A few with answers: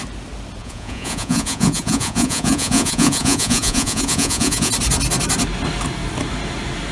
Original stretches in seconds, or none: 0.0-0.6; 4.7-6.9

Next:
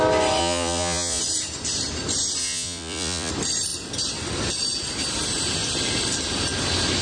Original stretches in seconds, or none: 0.0-0.4; 1.2-2.4; 3.3-7.0

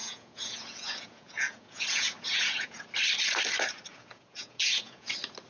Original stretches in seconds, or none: 2.8-3.9; 5.1-5.5

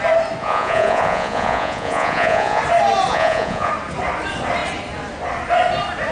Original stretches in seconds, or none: 0.0-0.4; 2.6-3.1; 3.7-6.1

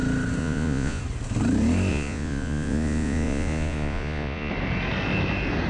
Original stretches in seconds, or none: 0.0-0.4; 1.0-1.9; 4.5-5.7

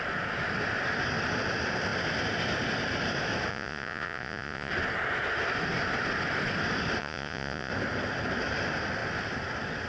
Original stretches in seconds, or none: 0.0-3.5; 4.7-7.0; 7.7-9.9